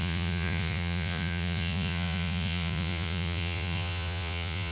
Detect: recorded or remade remade